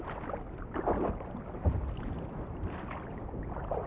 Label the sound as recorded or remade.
recorded